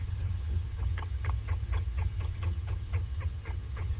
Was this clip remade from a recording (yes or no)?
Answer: yes